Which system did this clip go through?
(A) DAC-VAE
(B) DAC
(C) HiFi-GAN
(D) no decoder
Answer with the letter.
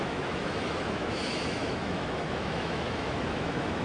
A